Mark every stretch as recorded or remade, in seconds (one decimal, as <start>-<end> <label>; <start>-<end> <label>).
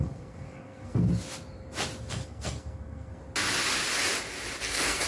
0.0-1.1 remade; 1.1-2.0 recorded; 2.0-3.2 remade; 3.2-4.6 recorded; 4.6-5.1 remade